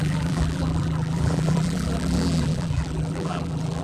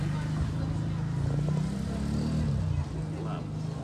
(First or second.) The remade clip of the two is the first